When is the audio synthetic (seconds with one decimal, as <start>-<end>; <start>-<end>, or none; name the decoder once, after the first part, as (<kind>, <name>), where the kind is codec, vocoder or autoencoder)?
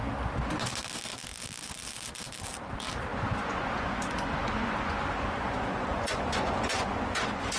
3.1-7.6 (vocoder, Vocos)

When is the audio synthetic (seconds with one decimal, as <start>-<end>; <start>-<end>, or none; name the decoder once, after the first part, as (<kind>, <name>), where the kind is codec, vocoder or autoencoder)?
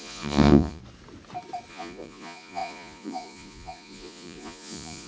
0.0-0.8 (vocoder, Vocos); 1.7-5.1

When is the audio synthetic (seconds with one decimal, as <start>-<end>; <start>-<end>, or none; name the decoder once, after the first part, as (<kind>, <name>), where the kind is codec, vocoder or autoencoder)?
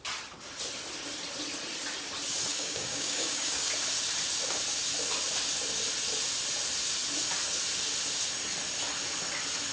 2.5-3.7 (codec, DAC)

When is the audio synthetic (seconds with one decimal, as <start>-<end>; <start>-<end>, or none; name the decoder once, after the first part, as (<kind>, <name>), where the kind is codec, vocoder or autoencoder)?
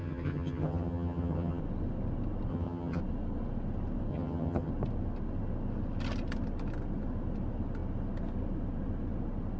0.0-1.6 (vocoder, HiFi-GAN); 2.5-3.0; 4.1-4.7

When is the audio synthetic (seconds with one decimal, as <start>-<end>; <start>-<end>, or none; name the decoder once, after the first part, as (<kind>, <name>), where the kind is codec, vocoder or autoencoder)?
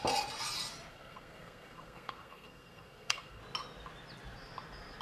0.9-3.4 (codec, SNAC)